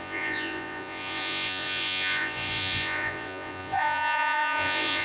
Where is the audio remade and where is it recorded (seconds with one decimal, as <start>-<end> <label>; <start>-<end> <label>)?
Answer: 0.0-5.0 remade